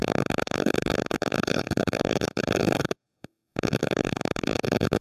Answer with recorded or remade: remade